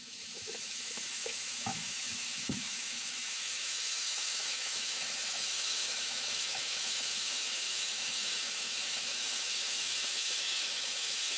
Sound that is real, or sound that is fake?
fake